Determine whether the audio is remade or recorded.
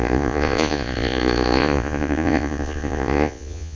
remade